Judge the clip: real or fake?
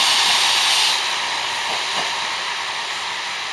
real